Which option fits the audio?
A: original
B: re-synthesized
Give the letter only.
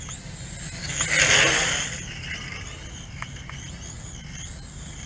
A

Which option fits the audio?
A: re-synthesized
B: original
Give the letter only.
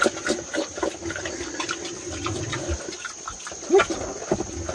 B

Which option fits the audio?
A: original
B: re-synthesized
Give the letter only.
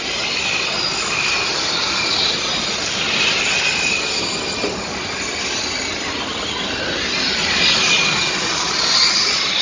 A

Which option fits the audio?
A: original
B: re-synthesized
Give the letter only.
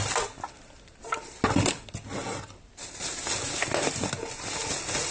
A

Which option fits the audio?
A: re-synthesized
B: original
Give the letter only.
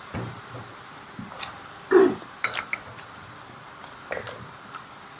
B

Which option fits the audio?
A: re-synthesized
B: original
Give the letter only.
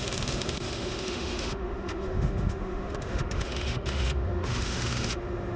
A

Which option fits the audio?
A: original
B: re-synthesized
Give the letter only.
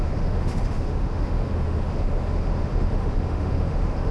B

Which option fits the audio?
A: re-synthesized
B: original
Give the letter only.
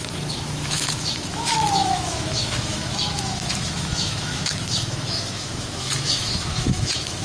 A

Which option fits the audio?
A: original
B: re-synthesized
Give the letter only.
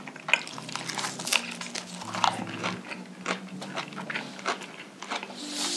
A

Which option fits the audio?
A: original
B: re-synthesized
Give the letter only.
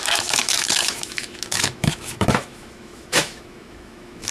B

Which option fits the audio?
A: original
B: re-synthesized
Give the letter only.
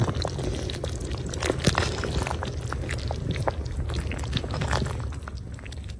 A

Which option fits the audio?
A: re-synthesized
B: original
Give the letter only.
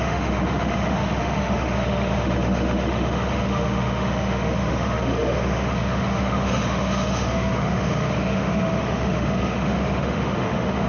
A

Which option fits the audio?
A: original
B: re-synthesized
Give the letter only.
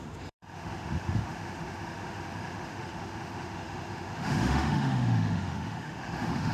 B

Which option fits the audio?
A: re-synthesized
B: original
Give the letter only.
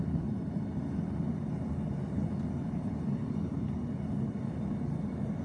B